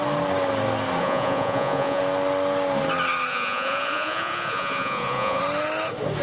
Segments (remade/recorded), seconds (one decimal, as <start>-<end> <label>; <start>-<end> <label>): 0.0-1.0 recorded; 1.0-2.0 remade; 2.0-3.3 recorded; 3.3-5.4 remade; 5.4-6.2 recorded